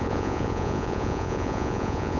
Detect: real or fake fake